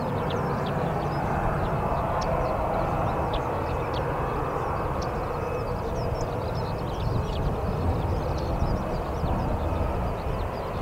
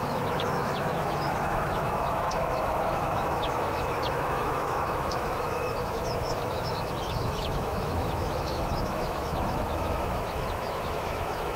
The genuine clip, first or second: first